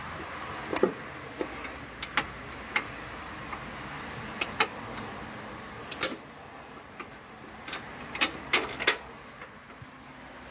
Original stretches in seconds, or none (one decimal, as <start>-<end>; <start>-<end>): 0.0-10.5